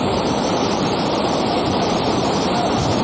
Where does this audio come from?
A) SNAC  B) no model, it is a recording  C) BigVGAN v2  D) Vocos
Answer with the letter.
C